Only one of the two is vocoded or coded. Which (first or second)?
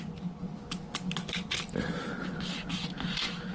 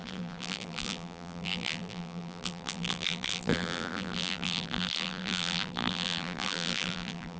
second